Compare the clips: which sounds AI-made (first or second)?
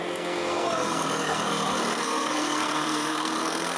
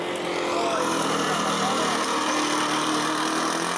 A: first